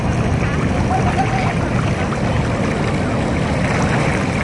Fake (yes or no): no